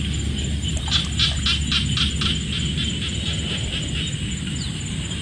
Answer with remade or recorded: recorded